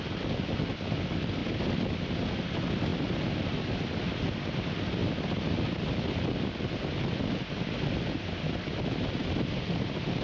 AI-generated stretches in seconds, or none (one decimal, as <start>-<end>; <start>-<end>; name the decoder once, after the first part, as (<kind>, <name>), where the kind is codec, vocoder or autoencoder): none